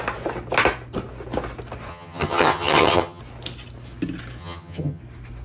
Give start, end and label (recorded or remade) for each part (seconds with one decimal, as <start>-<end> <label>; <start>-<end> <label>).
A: 0.0-1.9 recorded; 1.9-3.2 remade; 3.2-4.4 recorded; 4.4-5.0 remade; 5.0-5.4 recorded